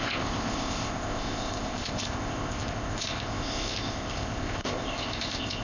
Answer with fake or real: fake